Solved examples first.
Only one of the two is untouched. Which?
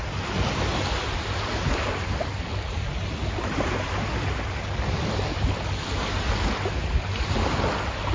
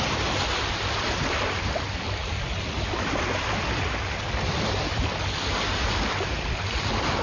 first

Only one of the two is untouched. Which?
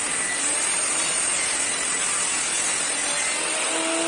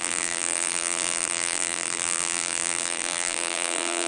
first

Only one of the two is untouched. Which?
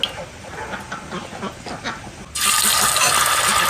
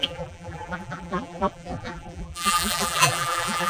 first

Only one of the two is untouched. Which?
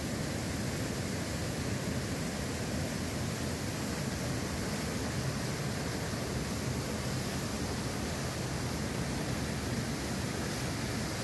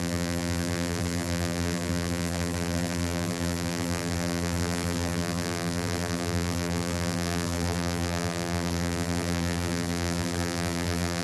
first